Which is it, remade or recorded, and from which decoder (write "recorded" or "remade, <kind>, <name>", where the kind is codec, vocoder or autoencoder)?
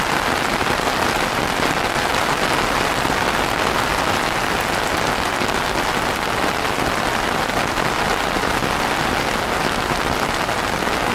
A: recorded